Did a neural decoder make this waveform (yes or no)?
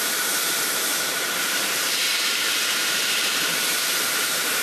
yes